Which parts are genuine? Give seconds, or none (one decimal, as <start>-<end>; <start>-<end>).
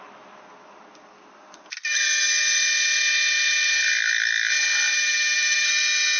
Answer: 0.0-6.2